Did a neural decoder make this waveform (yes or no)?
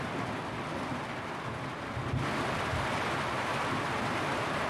yes